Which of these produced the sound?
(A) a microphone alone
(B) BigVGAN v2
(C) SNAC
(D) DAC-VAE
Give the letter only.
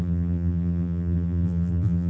B